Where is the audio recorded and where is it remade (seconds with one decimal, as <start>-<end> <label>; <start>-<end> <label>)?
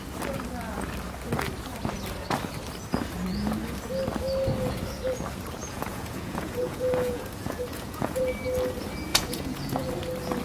0.0-5.6 recorded; 5.6-8.2 remade; 8.2-9.1 recorded; 9.1-9.9 remade; 9.9-10.4 recorded